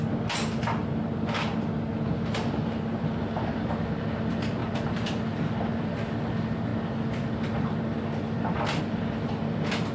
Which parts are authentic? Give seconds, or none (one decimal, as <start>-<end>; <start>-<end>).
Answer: 0.0-9.9